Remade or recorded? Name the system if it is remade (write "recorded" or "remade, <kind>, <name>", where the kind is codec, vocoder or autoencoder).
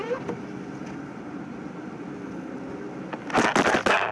recorded